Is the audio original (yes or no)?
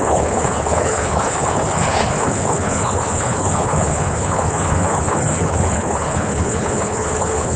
no